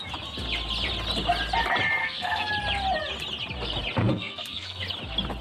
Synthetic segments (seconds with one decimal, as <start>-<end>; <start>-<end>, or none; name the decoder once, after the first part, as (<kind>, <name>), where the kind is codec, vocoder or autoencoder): 2.0-2.5 (codec, SNAC); 4.0-4.8